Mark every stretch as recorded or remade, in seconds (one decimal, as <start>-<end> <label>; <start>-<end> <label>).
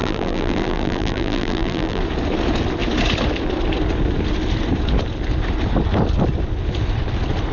0.0-2.0 remade; 2.0-7.5 recorded